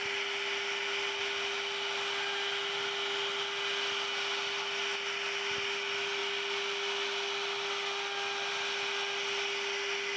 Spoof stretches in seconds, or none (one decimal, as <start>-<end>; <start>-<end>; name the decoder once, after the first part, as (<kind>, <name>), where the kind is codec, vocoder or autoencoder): none